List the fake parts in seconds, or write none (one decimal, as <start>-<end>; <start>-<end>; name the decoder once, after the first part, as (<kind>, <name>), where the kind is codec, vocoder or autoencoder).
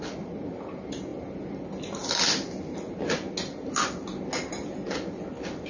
none